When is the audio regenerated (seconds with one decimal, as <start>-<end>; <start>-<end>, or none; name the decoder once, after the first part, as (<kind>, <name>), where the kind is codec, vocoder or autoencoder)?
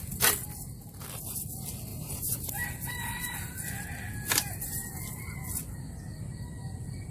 1.9-2.5 (vocoder, BigVGAN v2)